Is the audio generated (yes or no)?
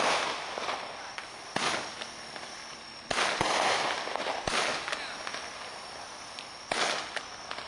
no